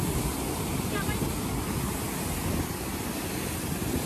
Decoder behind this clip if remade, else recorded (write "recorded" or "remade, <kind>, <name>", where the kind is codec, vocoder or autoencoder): recorded